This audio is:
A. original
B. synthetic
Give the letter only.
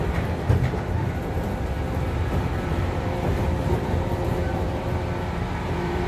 B